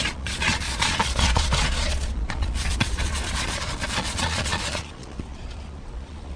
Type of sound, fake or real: fake